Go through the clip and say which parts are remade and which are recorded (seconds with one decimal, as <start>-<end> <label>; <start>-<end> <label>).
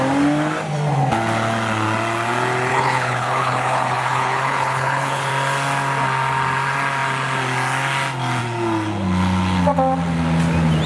0.0-2.7 recorded; 2.7-5.3 remade; 5.3-10.9 recorded